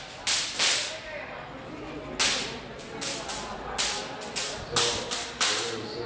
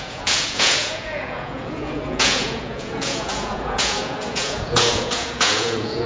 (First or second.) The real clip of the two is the first